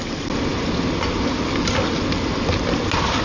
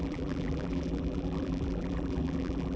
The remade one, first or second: second